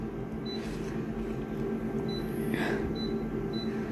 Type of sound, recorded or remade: recorded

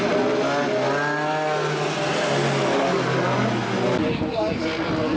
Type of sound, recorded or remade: recorded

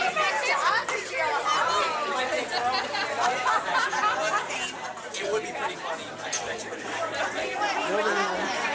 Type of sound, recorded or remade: recorded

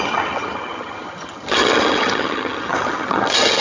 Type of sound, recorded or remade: remade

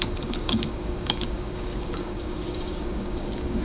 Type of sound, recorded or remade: remade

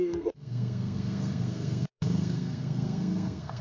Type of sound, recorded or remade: remade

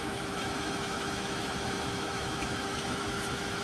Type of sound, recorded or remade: remade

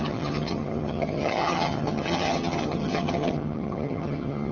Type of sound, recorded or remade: remade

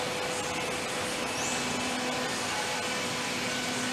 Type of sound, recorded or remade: recorded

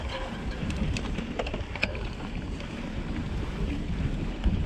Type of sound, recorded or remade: remade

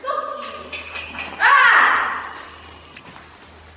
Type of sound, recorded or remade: recorded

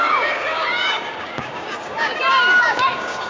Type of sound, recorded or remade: remade